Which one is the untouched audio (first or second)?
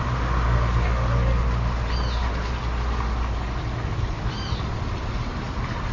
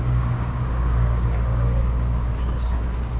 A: first